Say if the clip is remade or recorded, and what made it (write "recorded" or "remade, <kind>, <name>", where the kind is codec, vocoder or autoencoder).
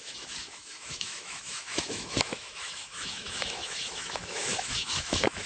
remade, autoencoder, DAC-VAE